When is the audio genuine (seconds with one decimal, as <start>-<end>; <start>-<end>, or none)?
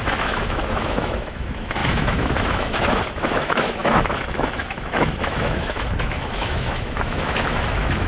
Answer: none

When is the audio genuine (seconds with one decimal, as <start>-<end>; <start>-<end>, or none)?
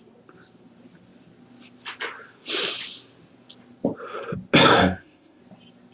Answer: 0.0-4.8; 5.4-5.9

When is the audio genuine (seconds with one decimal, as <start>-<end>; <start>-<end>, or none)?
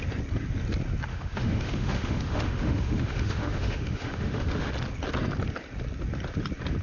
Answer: 0.0-1.1; 4.7-6.8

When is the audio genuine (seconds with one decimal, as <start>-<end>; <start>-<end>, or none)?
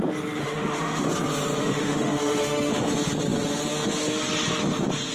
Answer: 0.0-0.4; 1.1-1.6; 2.7-5.1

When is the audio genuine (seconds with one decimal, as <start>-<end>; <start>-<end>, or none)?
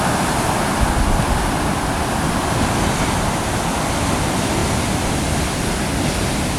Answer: 0.0-6.6